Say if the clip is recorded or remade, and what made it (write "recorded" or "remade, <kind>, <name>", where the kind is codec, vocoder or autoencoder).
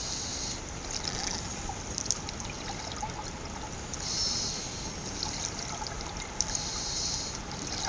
recorded